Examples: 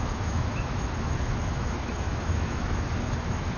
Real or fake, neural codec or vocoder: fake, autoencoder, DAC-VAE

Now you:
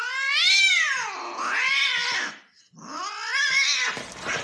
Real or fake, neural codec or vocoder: real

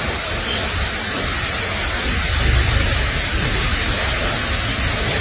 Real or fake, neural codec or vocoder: real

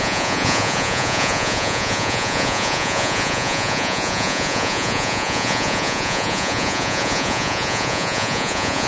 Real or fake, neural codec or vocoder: fake, vocoder, Vocos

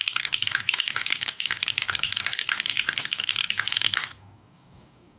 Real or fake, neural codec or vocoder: fake, codec, DAC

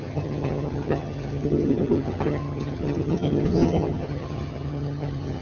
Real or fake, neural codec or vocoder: fake, vocoder, HiFi-GAN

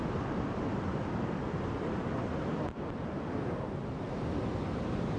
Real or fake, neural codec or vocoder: real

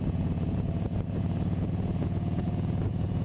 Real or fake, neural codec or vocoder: fake, vocoder, Vocos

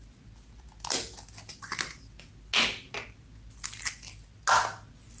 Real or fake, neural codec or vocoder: real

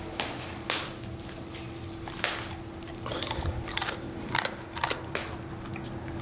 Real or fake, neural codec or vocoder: real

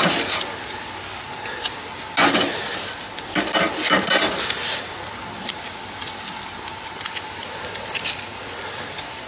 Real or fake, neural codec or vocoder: real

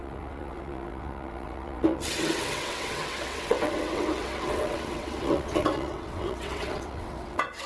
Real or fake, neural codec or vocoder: fake, vocoder, WaveNeXt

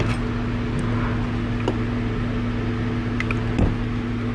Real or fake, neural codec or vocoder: real